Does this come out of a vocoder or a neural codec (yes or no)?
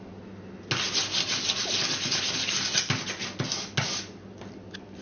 no